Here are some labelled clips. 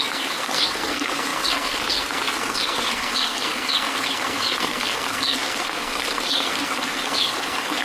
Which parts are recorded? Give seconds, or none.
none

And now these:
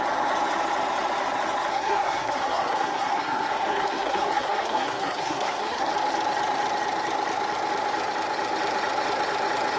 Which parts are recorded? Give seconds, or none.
0.0-1.7; 5.9-9.8

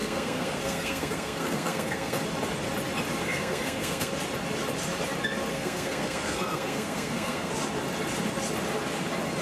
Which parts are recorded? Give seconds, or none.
2.2-3.2; 4.1-5.5; 7.5-9.4

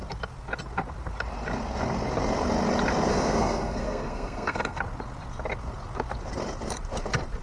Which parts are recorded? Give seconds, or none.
0.0-3.1; 4.8-7.4

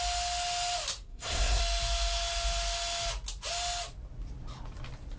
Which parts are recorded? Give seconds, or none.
0.0-1.1; 1.6-5.2

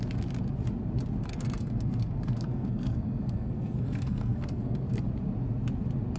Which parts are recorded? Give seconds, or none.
0.0-1.3; 5.0-6.2